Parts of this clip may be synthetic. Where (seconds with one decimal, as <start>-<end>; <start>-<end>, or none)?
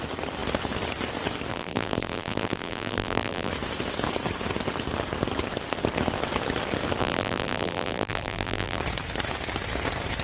1.5-3.5; 7.0-8.8